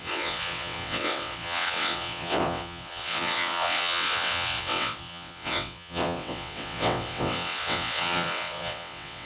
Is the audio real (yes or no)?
no